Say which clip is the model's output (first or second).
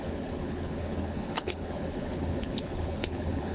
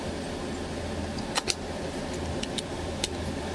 first